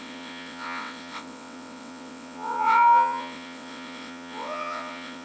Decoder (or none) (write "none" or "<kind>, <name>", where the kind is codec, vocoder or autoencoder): vocoder, WaveNeXt